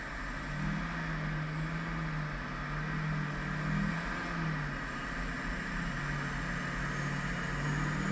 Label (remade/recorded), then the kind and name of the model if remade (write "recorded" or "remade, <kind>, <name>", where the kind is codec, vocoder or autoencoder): recorded